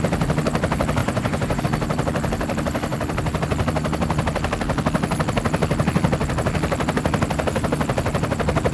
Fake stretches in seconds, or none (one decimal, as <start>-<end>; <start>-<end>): 1.0-1.6